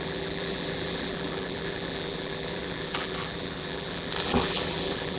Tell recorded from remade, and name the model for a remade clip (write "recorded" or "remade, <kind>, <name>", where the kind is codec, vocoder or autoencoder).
remade, vocoder, BigVGAN v2